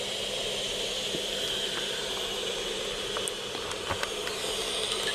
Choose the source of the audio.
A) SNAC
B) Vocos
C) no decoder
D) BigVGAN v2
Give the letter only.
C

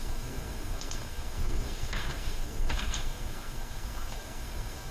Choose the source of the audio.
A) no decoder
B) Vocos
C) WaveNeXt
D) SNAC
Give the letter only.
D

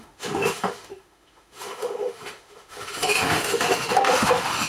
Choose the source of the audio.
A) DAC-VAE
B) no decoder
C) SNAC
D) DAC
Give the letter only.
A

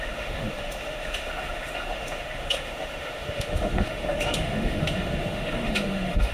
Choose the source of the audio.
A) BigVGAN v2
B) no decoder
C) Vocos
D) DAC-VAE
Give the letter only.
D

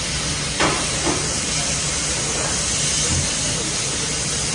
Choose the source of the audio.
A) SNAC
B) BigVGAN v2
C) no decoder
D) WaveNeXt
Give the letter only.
C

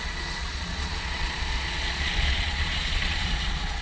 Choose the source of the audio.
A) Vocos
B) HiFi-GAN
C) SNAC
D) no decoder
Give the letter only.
A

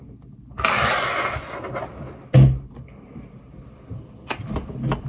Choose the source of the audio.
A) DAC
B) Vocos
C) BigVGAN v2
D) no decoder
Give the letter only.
D